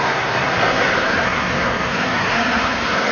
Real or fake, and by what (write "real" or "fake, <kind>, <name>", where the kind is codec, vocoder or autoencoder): fake, codec, SNAC